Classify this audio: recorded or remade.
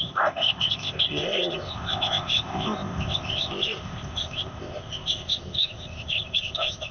remade